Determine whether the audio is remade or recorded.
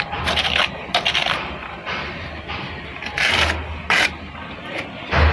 remade